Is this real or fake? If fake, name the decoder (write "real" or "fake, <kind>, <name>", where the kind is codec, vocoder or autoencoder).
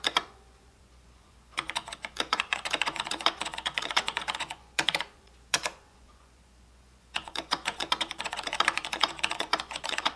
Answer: fake, vocoder, Vocos